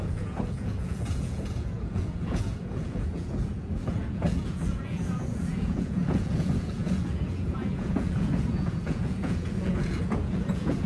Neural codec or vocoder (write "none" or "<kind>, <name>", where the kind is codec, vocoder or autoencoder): vocoder, Vocos